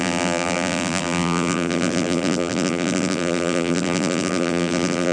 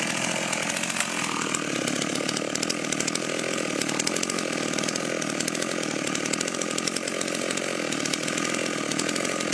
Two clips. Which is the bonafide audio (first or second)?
second